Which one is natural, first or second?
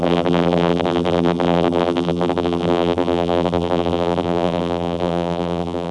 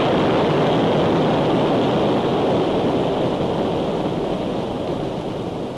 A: second